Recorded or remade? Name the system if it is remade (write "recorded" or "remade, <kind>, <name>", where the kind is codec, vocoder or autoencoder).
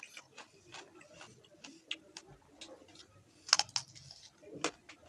recorded